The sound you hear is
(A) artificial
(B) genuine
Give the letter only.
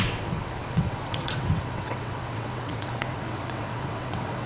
A